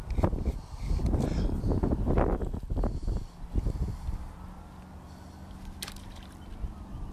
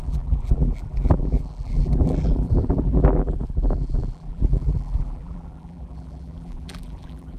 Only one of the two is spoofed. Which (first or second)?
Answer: second